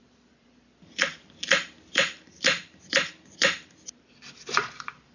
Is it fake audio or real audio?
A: fake